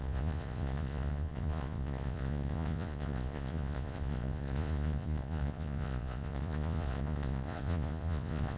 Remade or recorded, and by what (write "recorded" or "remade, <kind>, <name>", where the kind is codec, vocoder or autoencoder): remade, vocoder, Vocos